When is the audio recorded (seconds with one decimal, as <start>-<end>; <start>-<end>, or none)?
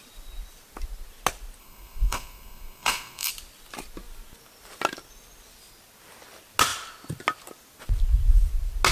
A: 0.0-1.6; 3.3-8.9